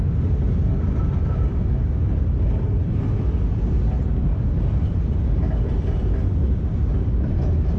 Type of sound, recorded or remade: recorded